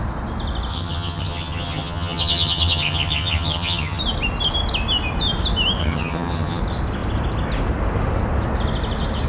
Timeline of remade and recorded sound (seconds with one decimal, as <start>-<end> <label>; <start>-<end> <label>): 0.0-0.7 recorded; 0.7-4.0 remade; 4.0-5.8 recorded; 5.8-6.6 remade; 6.6-9.3 recorded